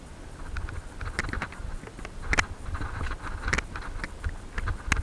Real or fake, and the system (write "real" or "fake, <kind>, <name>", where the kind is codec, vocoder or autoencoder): real